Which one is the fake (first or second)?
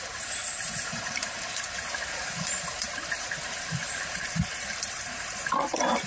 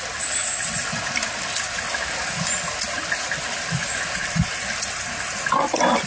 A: first